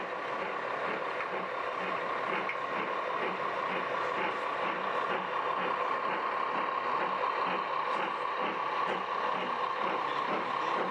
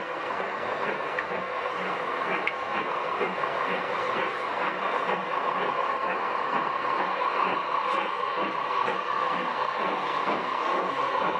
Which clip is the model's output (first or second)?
second